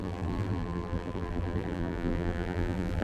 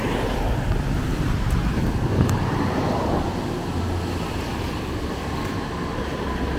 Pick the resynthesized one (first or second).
first